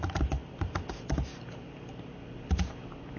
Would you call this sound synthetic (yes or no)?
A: no